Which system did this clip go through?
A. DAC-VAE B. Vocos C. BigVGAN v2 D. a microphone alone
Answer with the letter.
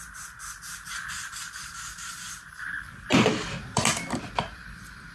D